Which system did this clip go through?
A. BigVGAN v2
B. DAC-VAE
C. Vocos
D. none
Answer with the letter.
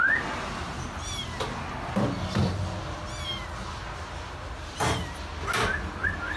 D